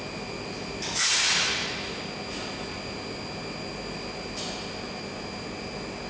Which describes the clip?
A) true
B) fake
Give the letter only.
A